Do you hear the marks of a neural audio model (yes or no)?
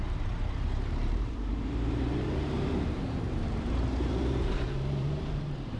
yes